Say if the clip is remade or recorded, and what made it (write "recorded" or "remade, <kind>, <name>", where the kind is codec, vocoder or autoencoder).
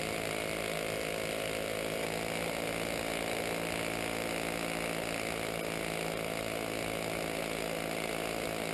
recorded